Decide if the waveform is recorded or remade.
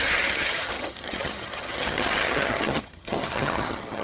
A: remade